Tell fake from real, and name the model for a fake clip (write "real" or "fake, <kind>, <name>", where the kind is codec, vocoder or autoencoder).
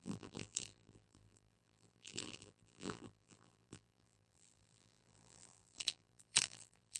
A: fake, vocoder, BigVGAN v2